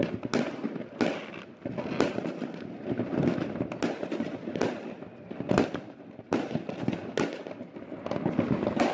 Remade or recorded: recorded